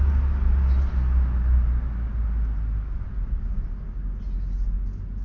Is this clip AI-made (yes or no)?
no